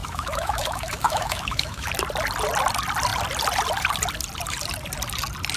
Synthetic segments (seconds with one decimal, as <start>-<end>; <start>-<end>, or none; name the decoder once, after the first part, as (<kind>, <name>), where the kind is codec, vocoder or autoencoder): 0.0-1.9 (autoencoder, DAC-VAE)